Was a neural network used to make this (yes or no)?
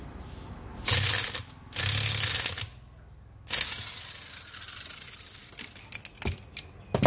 no